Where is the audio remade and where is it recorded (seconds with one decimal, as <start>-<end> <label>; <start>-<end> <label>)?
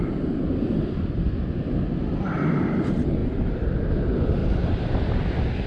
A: 0.0-4.4 recorded; 4.4-5.2 remade; 5.2-5.7 recorded